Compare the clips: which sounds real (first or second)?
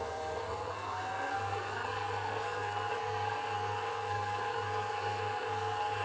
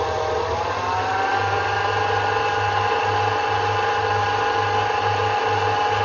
second